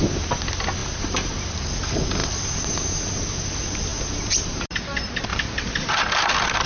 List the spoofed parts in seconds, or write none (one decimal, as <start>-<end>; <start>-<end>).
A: 0.8-1.5; 2.2-2.7; 5.3-5.9